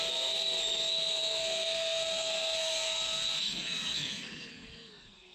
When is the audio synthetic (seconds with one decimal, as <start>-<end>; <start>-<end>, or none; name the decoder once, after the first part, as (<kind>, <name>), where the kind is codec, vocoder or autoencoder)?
0.0-5.3 (codec, SNAC)

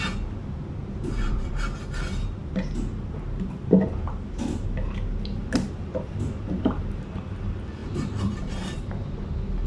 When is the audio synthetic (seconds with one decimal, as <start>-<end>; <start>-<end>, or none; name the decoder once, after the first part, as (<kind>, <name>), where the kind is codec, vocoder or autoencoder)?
0.8-1.5 (vocoder, BigVGAN v2); 7.8-8.8

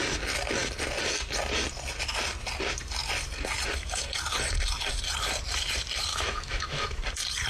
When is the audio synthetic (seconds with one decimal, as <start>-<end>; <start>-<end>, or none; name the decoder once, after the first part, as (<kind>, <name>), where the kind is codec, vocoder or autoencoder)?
6.1-7.0 (autoencoder, DAC-VAE)